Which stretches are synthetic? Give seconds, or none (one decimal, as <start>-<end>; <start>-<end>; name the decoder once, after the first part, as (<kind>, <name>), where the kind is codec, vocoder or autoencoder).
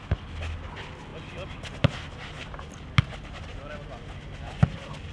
none